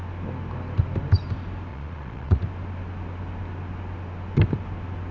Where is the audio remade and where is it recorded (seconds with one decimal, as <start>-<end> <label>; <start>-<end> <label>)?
0.0-1.7 recorded; 1.7-2.4 remade; 2.4-5.1 recorded